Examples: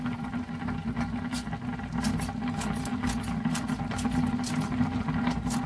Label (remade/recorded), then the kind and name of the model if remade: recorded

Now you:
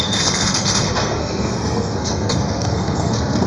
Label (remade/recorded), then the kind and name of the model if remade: remade, codec, SNAC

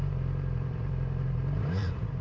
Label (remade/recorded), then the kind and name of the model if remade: remade, vocoder, BigVGAN v2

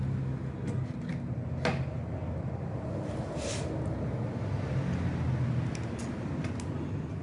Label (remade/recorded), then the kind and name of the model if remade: recorded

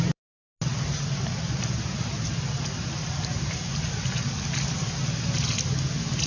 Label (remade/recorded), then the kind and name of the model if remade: recorded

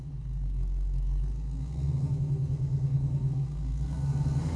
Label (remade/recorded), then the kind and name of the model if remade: remade, codec, SNAC